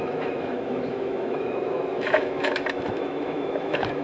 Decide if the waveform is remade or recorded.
remade